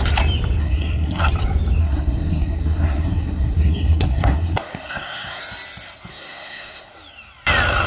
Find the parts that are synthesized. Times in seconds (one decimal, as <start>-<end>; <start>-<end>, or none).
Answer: 0.6-1.3; 1.8-5.4; 6.1-6.9